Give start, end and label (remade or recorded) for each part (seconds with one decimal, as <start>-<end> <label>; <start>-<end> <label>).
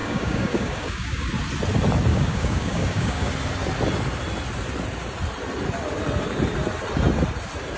0.0-1.3 remade; 1.3-2.1 recorded; 2.1-3.3 remade; 3.3-7.8 recorded